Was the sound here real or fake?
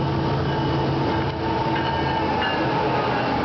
real